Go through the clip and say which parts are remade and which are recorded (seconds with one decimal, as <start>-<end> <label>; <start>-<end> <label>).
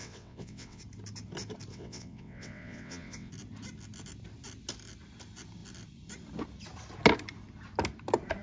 0.0-0.8 remade; 0.8-1.7 recorded; 1.7-3.3 remade; 3.3-8.4 recorded